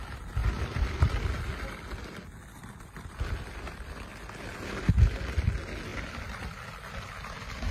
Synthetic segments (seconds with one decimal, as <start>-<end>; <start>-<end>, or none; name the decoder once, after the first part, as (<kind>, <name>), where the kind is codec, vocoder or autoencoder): 0.4-1.4 (vocoder, BigVGAN v2); 2.6-4.0